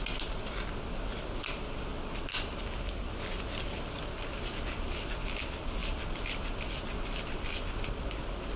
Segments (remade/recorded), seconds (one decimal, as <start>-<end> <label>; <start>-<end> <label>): 0.0-8.6 recorded